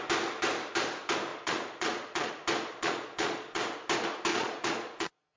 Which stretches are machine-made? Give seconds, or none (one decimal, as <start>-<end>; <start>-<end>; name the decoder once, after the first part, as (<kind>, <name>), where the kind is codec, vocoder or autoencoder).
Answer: 1.3-2.3 (vocoder, Vocos); 2.7-3.6; 4.3-5.4